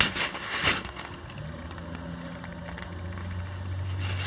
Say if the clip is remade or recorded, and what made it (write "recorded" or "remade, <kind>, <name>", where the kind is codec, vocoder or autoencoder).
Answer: recorded